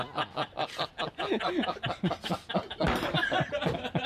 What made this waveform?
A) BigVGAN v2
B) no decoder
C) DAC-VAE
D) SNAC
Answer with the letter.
B